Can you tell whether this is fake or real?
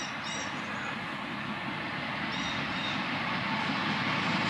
real